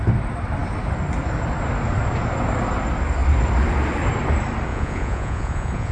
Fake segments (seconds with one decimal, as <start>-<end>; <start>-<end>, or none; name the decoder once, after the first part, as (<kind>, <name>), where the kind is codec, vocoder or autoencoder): 4.7-5.9 (vocoder, Vocos)